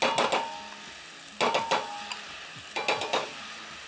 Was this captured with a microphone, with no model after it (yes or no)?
yes